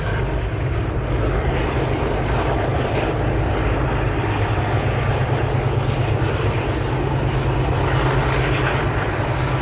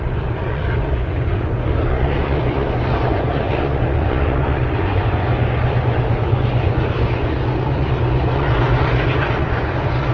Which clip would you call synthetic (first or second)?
second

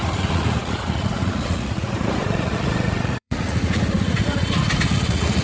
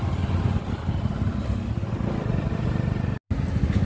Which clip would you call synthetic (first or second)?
first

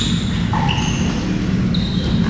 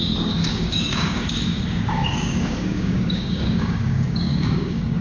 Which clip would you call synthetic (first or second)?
second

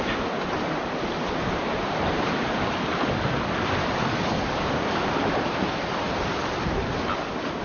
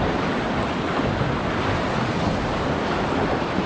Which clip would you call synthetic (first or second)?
first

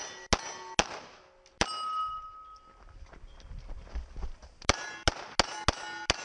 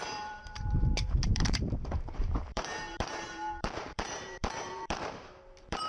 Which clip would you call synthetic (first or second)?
second